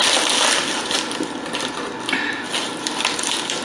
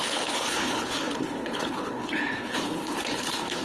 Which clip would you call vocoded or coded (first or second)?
second